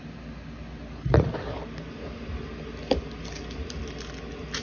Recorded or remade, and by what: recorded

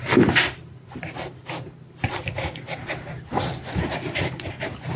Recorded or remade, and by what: recorded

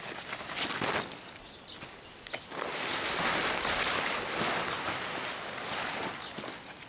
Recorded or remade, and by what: recorded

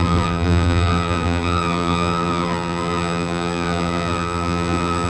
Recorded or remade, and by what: remade, vocoder, BigVGAN v2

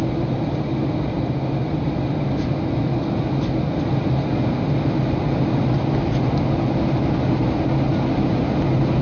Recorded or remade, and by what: recorded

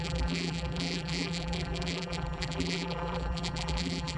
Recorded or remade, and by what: remade, vocoder, BigVGAN v2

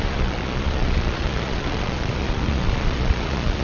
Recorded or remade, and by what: remade, vocoder, Vocos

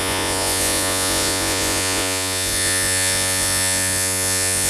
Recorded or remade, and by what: remade, vocoder, Vocos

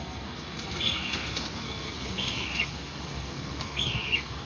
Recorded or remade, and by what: remade, codec, SNAC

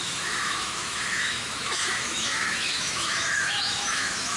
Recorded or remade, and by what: remade, autoencoder, DAC-VAE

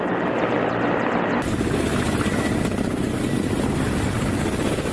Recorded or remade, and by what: recorded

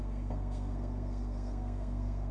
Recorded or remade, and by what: remade, codec, SNAC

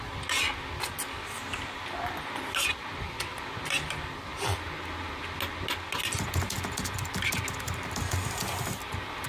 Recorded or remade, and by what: recorded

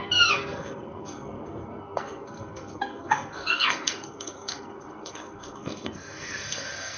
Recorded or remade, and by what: remade, codec, SNAC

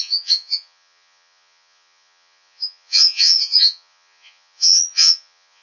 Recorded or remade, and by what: remade, vocoder, Vocos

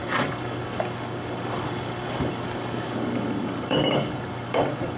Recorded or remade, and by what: remade, codec, DAC